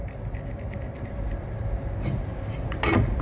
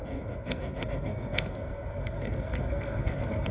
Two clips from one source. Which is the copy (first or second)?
second